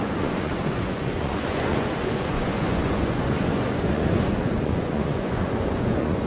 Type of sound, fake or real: fake